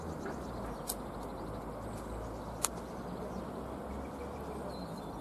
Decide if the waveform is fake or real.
real